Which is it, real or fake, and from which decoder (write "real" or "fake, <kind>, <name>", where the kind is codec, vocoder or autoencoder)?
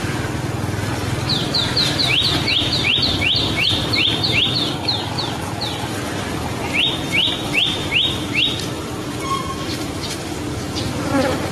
fake, vocoder, BigVGAN v2